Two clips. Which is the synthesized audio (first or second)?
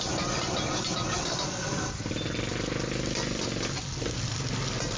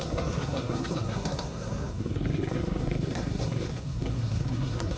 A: second